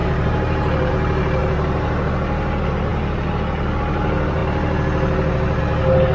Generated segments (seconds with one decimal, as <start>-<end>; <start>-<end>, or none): 0.0-0.9; 1.4-2.1